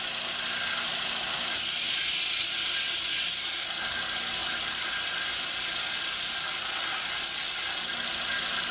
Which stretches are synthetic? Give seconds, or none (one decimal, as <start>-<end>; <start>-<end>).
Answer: none